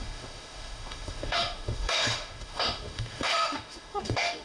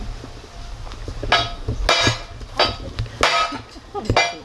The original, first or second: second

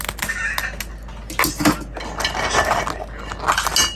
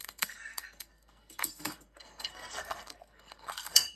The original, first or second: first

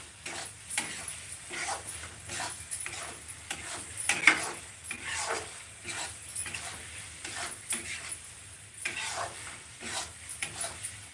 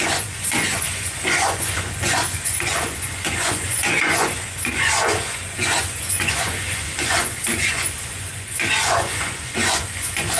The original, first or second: first